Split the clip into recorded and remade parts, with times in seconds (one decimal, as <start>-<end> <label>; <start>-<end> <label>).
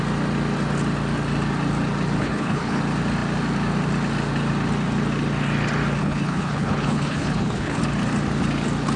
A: 0.0-2.2 recorded; 2.2-2.8 remade; 2.8-6.0 recorded; 6.0-7.8 remade; 7.8-9.0 recorded